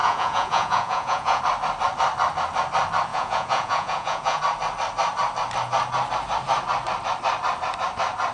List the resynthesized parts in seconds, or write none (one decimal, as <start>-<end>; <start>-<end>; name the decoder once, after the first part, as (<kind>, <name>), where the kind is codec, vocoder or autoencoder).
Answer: 0.0-1.4 (vocoder, Vocos); 3.1-4.4